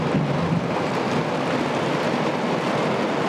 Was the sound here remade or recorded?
recorded